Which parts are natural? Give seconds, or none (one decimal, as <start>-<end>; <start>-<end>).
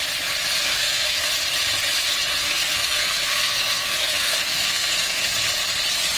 0.0-0.6; 1.3-2.4; 5.3-6.2